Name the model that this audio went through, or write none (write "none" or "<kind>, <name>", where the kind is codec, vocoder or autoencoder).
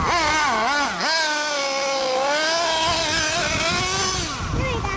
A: none